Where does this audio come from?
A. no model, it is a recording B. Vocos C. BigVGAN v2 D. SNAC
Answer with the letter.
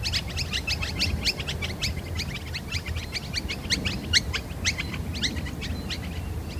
A